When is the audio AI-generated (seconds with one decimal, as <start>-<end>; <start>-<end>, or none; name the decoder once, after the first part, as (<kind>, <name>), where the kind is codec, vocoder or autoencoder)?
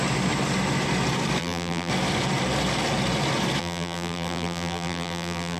1.4-1.9 (vocoder, BigVGAN v2); 3.6-5.6